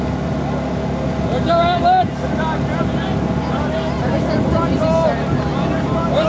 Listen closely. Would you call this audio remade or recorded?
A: recorded